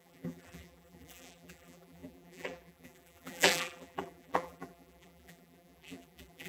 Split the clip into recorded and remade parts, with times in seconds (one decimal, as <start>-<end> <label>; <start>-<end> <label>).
0.0-6.5 remade

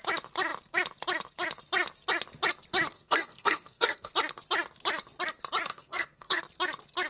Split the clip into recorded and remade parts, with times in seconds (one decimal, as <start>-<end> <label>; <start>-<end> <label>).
0.0-2.9 recorded; 2.9-4.1 remade; 4.1-5.7 recorded; 5.7-6.4 remade; 6.4-7.1 recorded

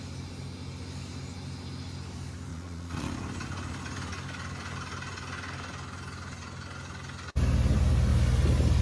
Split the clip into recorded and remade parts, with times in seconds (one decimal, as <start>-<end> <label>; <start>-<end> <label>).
0.0-2.5 recorded; 2.5-3.1 remade; 3.1-8.8 recorded

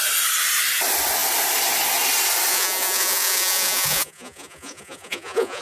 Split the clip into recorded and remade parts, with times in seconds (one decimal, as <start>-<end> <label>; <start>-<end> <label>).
0.0-2.5 recorded; 2.5-5.6 remade

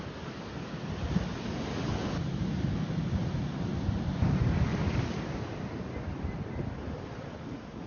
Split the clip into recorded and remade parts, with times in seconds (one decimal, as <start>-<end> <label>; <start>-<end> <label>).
0.0-4.7 recorded; 4.7-5.6 remade; 5.6-7.9 recorded

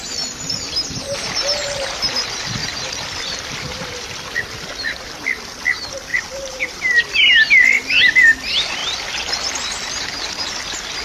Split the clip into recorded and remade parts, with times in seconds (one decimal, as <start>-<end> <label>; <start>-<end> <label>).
0.0-2.6 recorded; 2.6-3.8 remade; 3.8-6.1 recorded; 6.1-6.7 remade; 6.7-8.8 recorded; 8.8-9.5 remade; 9.5-11.0 recorded

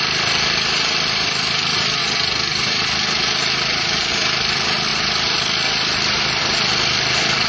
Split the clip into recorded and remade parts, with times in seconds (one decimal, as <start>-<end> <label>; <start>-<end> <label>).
0.0-2.0 remade; 2.0-4.1 recorded; 4.1-4.9 remade; 4.9-6.4 recorded; 6.4-7.5 remade